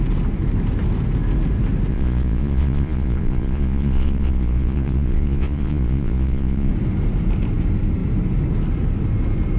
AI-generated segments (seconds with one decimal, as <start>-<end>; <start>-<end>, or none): 1.9-6.7

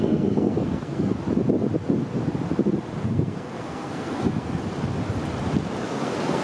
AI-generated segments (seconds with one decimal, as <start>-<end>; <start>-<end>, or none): 0.0-1.2; 3.0-4.6; 5.8-6.4

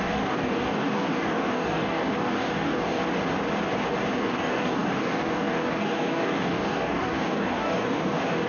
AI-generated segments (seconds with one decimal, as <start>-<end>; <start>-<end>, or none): 0.0-3.0; 4.2-8.5

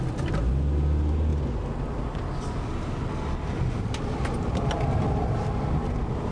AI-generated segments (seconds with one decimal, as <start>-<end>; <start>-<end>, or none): none